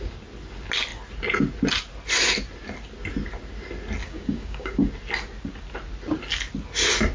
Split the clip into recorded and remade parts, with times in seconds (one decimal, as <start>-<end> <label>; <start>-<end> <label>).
0.0-4.0 recorded; 4.0-4.9 remade; 4.9-7.1 recorded